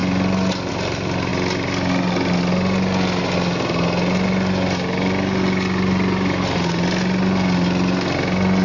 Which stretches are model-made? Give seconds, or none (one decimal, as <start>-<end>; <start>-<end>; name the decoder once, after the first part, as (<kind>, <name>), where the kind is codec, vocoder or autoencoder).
none